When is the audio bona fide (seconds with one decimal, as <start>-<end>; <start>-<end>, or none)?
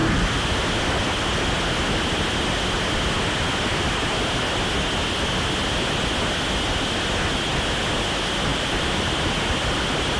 0.0-8.5; 9.1-10.2